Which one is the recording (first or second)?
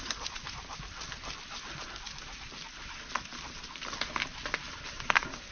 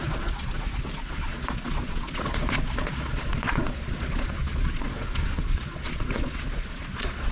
first